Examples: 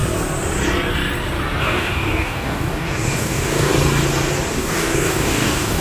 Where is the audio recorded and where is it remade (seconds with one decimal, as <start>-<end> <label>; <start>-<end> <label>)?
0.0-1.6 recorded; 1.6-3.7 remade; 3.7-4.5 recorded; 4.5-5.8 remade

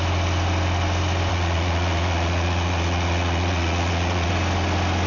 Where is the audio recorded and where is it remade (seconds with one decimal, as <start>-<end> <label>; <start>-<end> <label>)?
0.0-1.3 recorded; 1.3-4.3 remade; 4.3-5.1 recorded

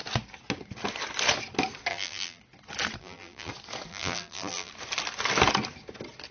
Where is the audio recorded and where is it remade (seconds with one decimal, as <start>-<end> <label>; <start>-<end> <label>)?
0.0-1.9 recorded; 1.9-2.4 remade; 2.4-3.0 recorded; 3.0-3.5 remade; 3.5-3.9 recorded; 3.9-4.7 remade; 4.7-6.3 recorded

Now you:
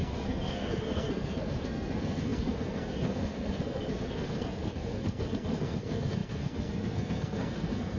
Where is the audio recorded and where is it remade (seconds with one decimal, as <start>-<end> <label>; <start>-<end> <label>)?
0.0-8.0 remade